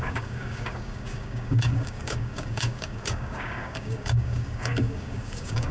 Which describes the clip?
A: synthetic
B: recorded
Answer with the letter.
A